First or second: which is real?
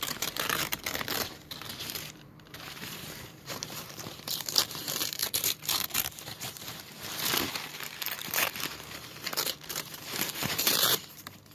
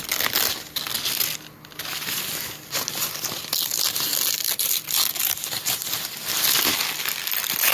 second